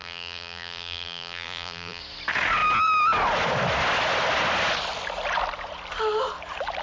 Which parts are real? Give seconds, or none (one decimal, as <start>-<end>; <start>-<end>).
2.0-6.8